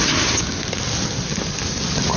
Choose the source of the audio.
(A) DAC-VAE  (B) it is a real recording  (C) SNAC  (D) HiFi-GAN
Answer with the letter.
B